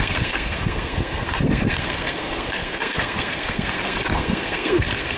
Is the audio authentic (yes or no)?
no